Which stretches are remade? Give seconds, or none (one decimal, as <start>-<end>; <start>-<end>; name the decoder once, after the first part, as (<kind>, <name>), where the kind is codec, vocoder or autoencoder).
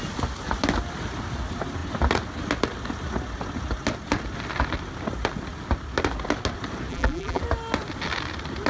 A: 6.9-7.4 (vocoder, BigVGAN v2)